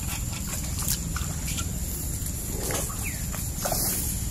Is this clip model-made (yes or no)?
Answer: no